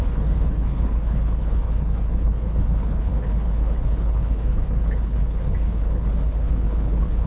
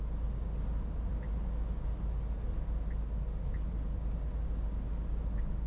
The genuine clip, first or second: second